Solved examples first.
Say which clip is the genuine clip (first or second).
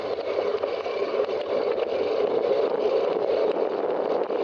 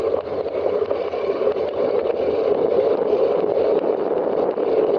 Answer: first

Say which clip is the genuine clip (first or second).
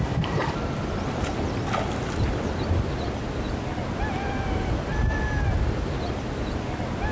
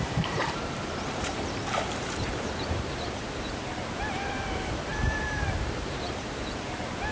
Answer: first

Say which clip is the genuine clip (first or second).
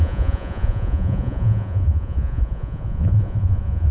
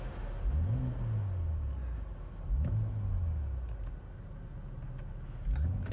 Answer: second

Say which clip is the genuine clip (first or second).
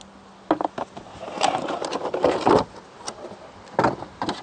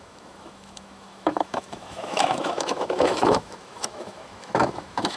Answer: first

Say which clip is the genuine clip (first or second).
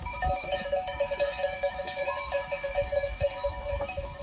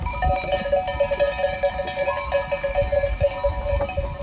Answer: second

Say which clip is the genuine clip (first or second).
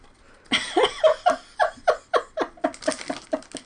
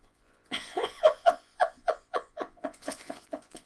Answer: first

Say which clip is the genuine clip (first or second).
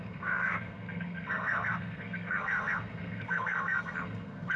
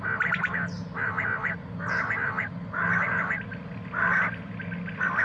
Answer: second